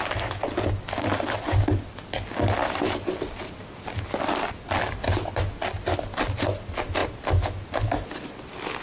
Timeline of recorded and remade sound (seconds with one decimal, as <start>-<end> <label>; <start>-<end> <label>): 0.0-8.8 recorded